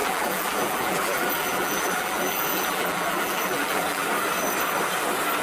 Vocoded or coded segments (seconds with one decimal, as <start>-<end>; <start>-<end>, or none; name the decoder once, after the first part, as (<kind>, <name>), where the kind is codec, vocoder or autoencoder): 0.0-4.0 (vocoder, BigVGAN v2)